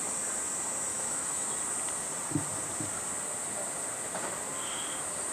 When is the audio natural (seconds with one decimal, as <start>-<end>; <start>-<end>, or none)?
0.0-0.9; 1.5-5.3